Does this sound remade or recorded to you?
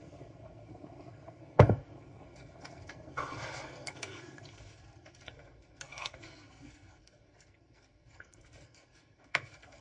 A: remade